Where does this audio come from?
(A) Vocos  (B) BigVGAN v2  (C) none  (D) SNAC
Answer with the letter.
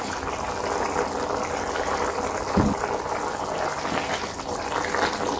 C